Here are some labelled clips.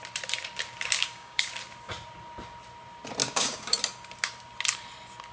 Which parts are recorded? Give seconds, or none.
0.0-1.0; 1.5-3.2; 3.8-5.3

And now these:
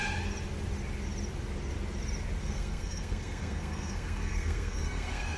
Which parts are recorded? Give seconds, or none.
0.0-2.4

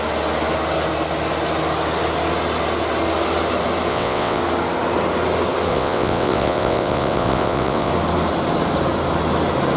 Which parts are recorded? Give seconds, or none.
0.0-3.9; 4.4-5.7; 7.9-9.8

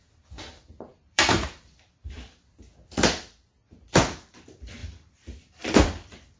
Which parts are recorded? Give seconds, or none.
0.0-0.9; 1.9-4.8

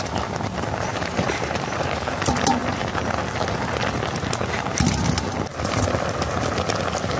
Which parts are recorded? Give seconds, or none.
0.0-0.9; 1.9-2.6; 3.2-7.2